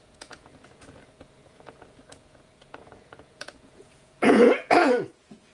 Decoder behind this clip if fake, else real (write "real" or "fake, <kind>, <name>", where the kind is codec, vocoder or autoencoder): fake, vocoder, Vocos